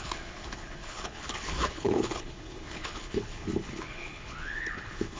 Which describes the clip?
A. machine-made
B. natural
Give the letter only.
A